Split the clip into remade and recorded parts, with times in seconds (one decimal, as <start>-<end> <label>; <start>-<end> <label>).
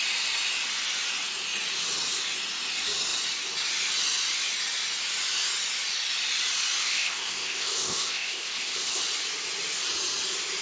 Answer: 0.0-6.8 recorded; 6.8-9.0 remade; 9.0-10.6 recorded